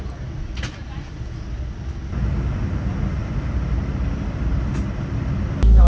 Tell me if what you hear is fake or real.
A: real